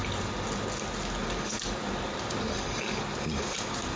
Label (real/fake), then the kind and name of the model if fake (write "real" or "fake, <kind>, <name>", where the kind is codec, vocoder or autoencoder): real